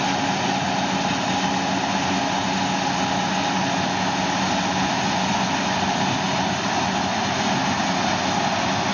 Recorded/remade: recorded